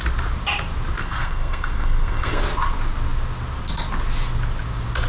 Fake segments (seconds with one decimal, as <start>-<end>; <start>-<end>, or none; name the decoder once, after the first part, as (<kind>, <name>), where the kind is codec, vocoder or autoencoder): 1.0-2.4 (codec, SNAC)